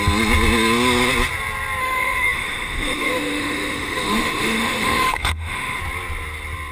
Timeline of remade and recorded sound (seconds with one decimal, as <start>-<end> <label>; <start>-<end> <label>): 0.0-1.8 recorded; 1.8-5.8 remade; 5.8-6.7 recorded